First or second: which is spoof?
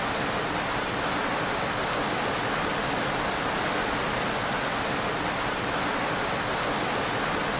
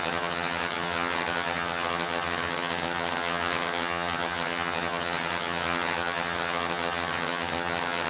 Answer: second